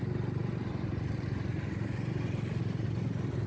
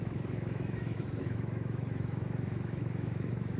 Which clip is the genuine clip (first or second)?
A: first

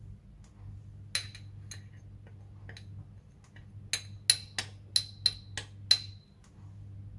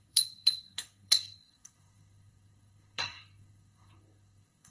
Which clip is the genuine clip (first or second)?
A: first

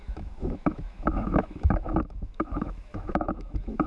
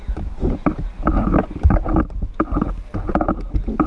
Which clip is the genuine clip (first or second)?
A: second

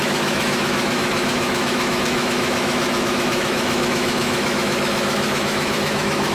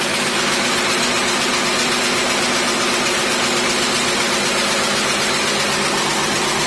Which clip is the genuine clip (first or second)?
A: second